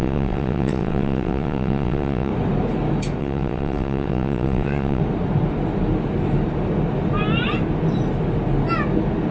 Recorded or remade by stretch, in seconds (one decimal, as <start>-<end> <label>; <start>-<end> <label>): 0.0-2.3 remade; 2.3-3.2 recorded; 3.2-5.0 remade; 5.0-9.3 recorded